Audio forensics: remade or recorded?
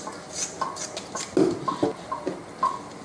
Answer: recorded